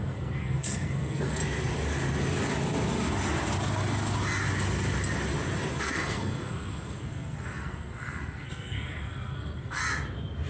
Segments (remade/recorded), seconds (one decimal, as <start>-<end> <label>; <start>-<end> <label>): 0.0-1.4 remade; 1.4-5.8 recorded; 5.8-9.8 remade; 9.8-10.5 recorded